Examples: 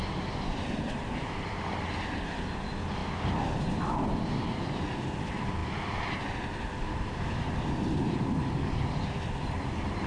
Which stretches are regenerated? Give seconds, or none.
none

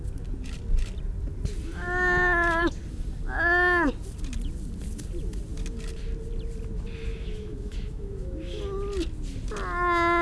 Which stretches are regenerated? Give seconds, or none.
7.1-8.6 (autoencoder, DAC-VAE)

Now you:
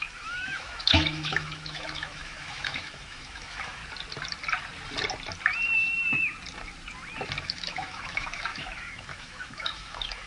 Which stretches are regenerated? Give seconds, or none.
0.0-3.8 (autoencoder, DAC-VAE); 7.4-10.3

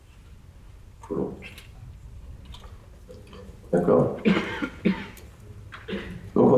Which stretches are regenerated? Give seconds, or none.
none

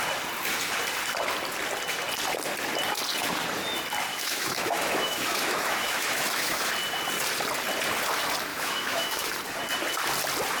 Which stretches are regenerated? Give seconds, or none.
4.1-6.7 (autoencoder, DAC-VAE); 8.5-9.3